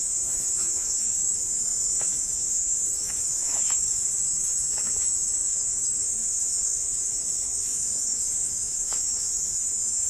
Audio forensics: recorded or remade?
remade